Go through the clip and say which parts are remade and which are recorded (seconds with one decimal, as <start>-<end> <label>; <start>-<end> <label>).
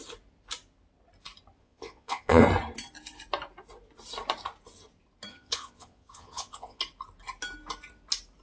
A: 0.0-1.6 recorded; 1.6-2.4 remade; 2.4-5.3 recorded; 5.3-6.8 remade; 6.8-8.4 recorded